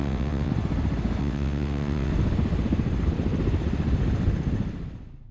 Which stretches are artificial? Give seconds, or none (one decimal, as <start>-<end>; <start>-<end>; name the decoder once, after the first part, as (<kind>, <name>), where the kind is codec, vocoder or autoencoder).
0.0-0.5 (vocoder, WaveNeXt); 1.2-2.1